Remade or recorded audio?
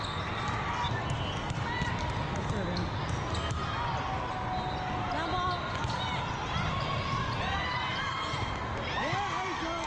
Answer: recorded